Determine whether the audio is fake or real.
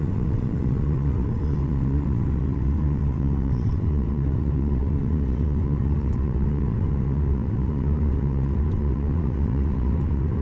fake